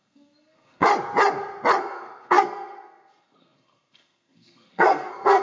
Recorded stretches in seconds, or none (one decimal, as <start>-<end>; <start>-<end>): 0.9-1.8